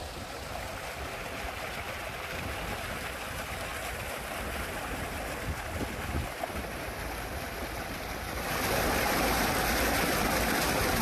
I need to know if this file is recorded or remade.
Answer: recorded